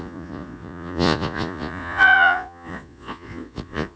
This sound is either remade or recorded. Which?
remade